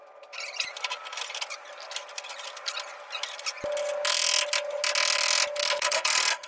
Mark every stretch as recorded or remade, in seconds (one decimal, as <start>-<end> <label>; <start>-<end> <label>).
0.0-5.6 recorded; 5.6-6.5 remade